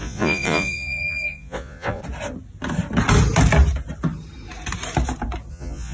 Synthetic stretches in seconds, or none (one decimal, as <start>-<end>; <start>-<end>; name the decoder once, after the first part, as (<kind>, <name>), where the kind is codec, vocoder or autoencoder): 0.0-2.0 (vocoder, Vocos); 5.5-5.9

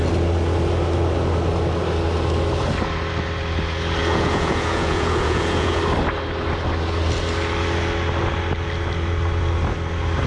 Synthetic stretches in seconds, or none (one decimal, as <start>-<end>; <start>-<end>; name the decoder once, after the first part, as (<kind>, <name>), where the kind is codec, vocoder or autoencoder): 4.0-5.8 (vocoder, Vocos)

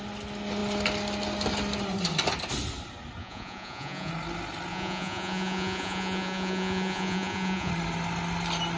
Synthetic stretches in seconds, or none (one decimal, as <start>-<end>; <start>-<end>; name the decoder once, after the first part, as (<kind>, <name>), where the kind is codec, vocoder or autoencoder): 3.2-4.1 (vocoder, Vocos); 4.7-7.7

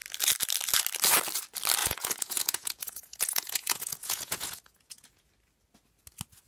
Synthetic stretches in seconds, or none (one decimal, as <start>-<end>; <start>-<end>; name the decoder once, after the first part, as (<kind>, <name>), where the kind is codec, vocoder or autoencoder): 1.8-5.3 (vocoder, Vocos)

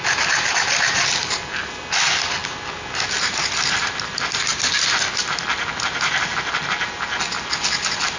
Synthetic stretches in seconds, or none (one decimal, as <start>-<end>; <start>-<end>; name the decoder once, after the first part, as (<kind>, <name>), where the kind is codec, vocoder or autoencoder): none

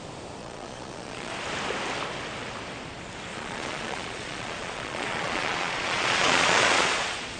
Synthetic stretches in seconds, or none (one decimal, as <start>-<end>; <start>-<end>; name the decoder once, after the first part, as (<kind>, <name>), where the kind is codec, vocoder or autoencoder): 0.4-1.3 (vocoder, Vocos); 3.3-7.4